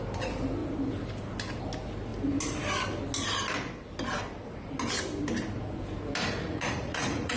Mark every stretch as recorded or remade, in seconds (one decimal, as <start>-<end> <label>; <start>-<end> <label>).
0.0-6.4 recorded; 6.4-7.4 remade